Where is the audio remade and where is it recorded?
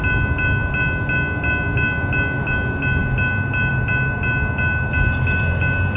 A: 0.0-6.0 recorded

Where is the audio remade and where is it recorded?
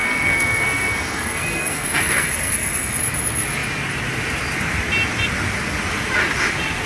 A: 0.0-3.0 remade; 3.0-6.9 recorded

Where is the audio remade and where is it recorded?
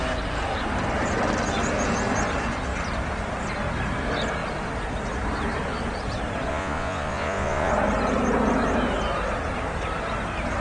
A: 0.0-6.5 recorded; 6.5-7.7 remade; 7.7-10.6 recorded